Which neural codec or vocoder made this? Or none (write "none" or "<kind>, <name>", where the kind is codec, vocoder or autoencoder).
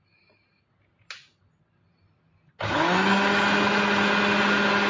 none